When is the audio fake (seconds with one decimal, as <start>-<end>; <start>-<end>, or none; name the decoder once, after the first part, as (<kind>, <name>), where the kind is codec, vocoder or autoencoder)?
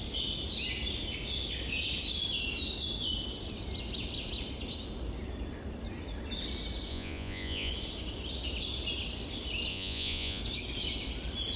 6.9-7.7 (vocoder, Vocos); 9.7-10.4